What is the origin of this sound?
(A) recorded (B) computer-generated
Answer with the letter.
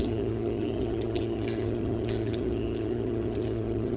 B